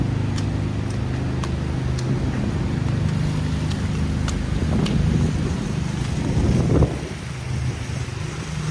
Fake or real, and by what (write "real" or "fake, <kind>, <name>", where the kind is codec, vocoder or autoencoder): real